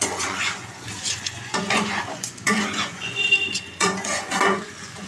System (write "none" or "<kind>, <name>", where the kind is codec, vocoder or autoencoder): vocoder, Vocos